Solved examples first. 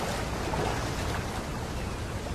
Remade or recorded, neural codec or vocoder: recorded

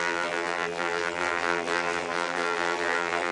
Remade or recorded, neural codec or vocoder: remade, vocoder, BigVGAN v2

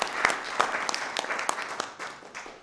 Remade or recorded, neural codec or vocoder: recorded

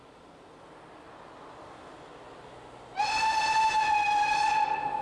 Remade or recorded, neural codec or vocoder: recorded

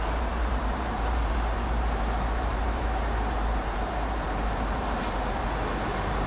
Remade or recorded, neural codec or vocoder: remade, vocoder, BigVGAN v2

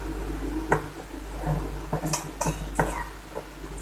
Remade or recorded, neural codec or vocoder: recorded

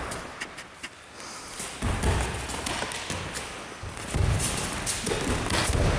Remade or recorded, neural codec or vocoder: recorded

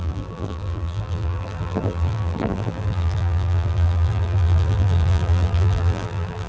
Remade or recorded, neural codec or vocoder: remade, vocoder, BigVGAN v2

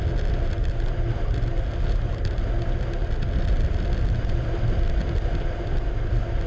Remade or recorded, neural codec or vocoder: recorded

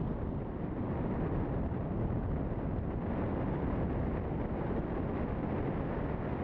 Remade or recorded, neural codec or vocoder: recorded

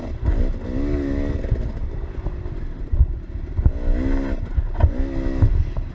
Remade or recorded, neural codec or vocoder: recorded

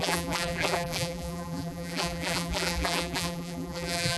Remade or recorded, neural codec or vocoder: remade, vocoder, BigVGAN v2